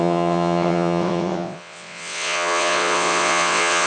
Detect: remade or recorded remade